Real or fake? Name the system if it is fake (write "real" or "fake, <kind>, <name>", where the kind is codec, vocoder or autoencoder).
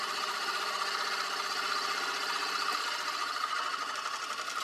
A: real